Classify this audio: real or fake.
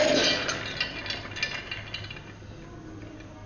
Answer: real